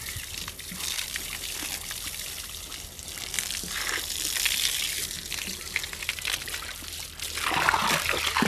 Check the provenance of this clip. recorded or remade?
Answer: recorded